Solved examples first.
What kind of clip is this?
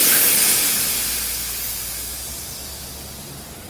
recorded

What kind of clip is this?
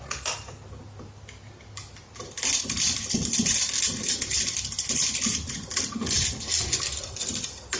recorded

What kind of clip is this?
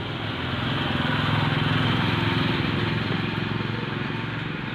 recorded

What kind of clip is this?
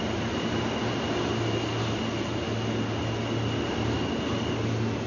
recorded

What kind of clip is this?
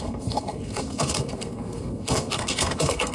remade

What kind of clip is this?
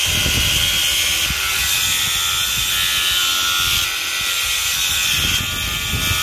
recorded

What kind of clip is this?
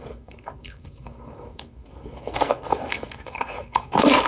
remade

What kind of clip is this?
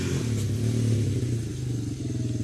recorded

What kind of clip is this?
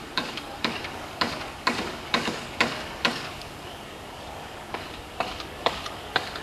remade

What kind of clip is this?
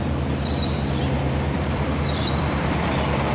remade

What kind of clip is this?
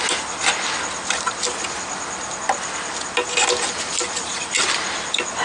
recorded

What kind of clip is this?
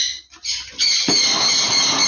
recorded